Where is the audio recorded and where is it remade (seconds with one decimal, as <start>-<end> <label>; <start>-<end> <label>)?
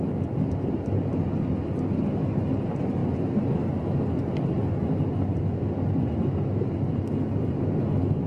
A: 0.0-8.3 recorded